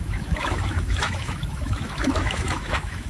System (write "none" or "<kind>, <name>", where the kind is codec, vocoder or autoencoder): autoencoder, DAC-VAE